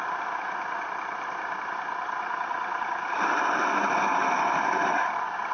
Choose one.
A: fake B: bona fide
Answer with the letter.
B